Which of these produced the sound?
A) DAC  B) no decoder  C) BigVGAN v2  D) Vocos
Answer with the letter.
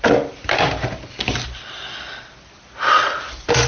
B